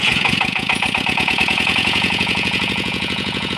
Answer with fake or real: fake